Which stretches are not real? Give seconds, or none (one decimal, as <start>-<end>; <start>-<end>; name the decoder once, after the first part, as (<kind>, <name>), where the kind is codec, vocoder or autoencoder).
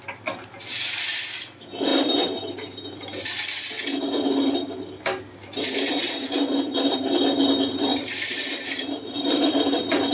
7.9-9.4 (vocoder, BigVGAN v2)